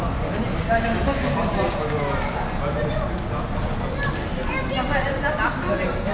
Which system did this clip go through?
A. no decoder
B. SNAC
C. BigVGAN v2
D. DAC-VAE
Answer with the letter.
A